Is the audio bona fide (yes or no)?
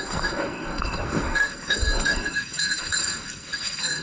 no